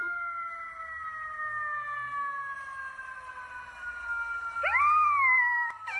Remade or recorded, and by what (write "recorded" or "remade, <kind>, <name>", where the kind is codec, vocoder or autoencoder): recorded